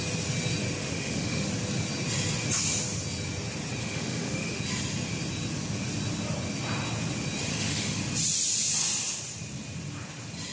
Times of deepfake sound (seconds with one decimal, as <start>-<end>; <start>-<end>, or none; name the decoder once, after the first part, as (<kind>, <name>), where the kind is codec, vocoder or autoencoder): 0.8-1.5 (autoencoder, DAC-VAE); 3.8-4.6; 7.5-8.0

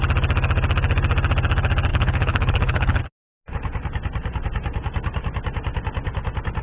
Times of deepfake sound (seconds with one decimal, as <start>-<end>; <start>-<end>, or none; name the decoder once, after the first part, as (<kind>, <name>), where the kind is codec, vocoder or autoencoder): 1.9-3.0 (codec, HILCodec)

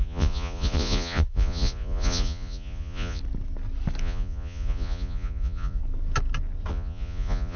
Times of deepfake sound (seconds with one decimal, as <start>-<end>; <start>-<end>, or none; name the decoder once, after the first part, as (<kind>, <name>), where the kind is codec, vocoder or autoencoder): 0.0-3.2 (vocoder, Vocos); 4.0-5.8; 6.7-7.6

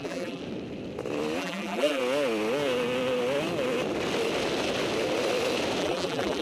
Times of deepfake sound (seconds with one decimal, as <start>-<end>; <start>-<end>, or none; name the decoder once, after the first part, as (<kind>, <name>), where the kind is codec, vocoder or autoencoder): 0.0-0.4 (vocoder, BigVGAN v2); 1.4-2.0; 5.8-6.4

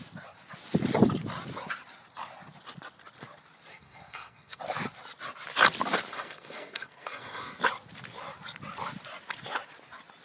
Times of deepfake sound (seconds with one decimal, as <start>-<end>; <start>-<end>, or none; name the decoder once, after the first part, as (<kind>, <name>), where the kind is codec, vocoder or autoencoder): 3.7-4.6 (codec, SNAC); 6.1-7.6